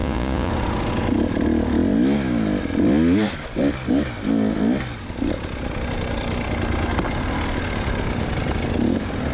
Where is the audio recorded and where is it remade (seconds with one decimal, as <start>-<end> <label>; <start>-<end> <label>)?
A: 0.0-0.5 remade; 0.5-9.3 recorded